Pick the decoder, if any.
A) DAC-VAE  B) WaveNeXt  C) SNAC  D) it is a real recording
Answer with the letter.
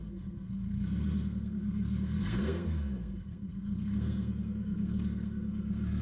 C